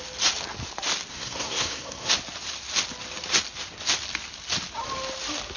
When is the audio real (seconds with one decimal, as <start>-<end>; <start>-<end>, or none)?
0.0-1.1; 2.1-5.6